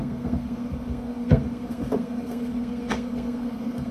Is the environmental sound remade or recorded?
remade